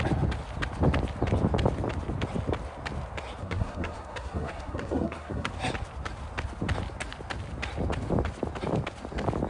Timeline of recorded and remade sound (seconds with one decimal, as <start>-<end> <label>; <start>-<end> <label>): 0.0-3.4 recorded; 3.4-5.5 remade; 5.5-9.5 recorded